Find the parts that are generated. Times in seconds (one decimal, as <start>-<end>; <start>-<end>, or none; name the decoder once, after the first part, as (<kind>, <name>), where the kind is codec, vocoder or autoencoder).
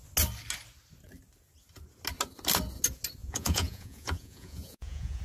3.2-5.2 (vocoder, Vocos)